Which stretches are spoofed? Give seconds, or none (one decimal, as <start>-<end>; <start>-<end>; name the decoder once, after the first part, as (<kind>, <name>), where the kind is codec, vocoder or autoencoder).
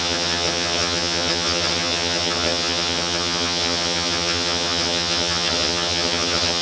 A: 0.0-6.6 (vocoder, HiFi-GAN)